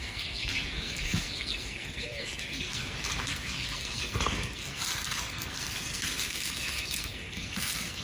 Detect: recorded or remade remade